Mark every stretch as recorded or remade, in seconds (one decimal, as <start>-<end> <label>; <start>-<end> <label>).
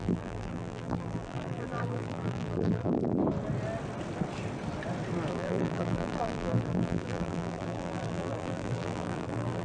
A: 0.0-3.2 remade; 3.2-5.3 recorded; 5.3-9.6 remade